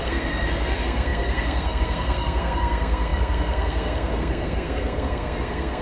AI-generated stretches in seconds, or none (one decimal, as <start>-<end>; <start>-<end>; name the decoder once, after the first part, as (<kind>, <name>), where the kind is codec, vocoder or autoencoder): 0.0-5.8 (codec, SNAC)